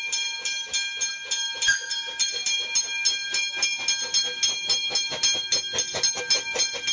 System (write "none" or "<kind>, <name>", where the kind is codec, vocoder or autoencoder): none